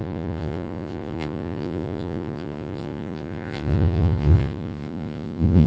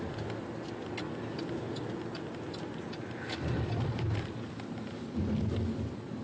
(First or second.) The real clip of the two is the second